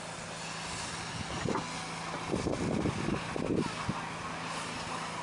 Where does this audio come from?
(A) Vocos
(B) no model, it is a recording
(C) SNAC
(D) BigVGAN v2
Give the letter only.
B